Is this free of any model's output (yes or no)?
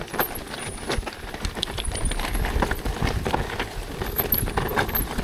yes